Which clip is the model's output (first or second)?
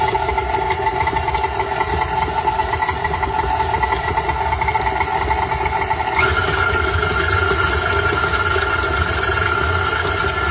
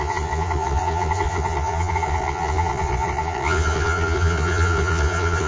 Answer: second